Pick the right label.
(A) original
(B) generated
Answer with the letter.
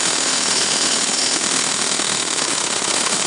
B